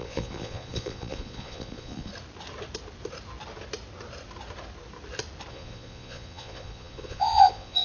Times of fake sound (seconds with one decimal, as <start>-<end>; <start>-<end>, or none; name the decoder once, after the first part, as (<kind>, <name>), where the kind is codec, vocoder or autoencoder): 0.0-2.1 (vocoder, Vocos); 5.5-7.8